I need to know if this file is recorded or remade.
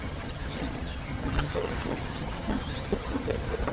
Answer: remade